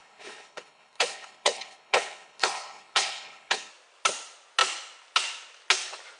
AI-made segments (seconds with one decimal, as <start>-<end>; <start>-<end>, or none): 0.0-3.7